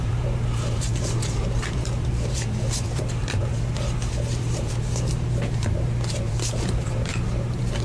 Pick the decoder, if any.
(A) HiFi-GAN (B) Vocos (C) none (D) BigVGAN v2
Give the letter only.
D